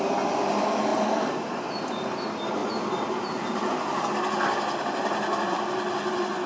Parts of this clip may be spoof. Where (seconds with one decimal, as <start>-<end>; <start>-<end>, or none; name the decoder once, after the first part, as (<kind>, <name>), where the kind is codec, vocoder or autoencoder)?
0.9-2.1 (vocoder, BigVGAN v2); 2.6-3.7